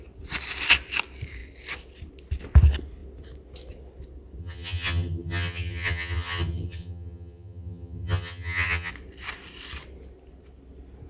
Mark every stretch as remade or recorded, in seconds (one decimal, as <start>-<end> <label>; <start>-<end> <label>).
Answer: 0.0-4.4 recorded; 4.4-8.9 remade; 8.9-11.1 recorded